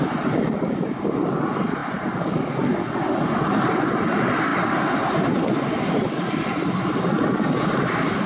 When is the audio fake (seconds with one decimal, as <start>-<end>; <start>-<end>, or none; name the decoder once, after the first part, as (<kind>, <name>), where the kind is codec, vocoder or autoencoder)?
0.0-1.8 (vocoder, BigVGAN v2); 3.6-4.5; 5.3-8.3